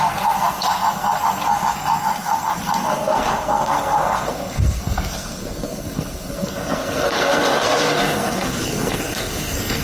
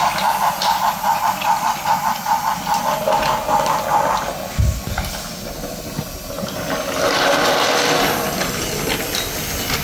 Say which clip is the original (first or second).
second